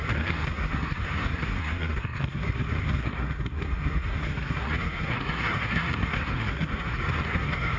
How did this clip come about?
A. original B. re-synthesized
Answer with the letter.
B